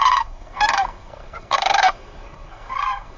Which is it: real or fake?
fake